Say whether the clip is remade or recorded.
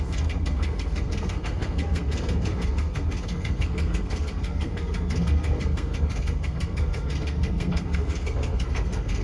remade